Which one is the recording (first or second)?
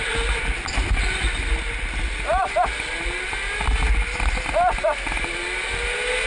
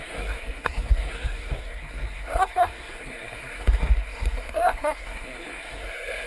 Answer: first